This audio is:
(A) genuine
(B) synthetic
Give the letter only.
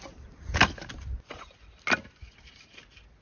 A